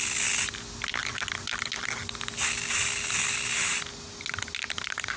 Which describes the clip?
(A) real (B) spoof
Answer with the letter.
A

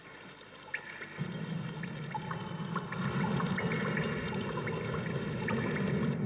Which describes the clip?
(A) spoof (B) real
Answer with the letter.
B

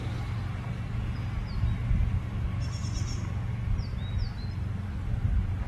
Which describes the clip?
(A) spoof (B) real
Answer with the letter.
B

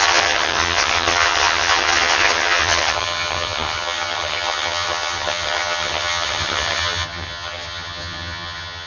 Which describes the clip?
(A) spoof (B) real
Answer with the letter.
A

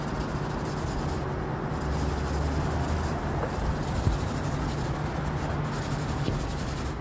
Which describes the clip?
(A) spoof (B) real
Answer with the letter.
B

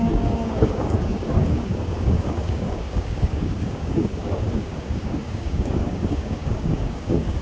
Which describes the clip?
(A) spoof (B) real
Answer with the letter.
A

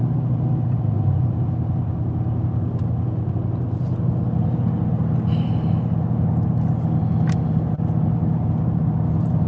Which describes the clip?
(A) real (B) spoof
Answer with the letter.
A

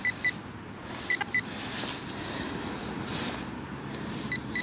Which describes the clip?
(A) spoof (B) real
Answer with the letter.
A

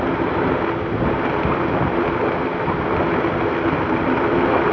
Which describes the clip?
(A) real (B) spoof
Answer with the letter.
A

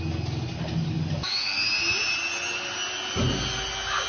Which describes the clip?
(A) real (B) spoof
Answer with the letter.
A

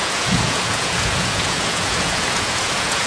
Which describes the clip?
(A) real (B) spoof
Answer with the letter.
B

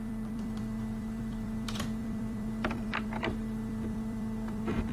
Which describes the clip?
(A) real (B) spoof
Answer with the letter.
B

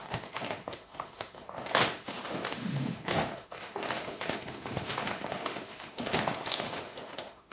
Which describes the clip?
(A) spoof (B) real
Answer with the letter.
A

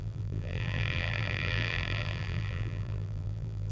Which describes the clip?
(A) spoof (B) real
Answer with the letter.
A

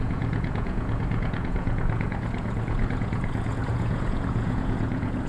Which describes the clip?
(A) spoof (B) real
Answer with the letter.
A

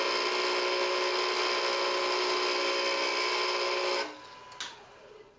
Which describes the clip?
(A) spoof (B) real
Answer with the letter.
B